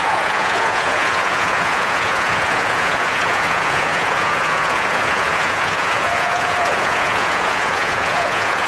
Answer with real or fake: fake